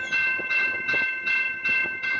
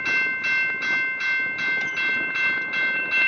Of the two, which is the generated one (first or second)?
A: first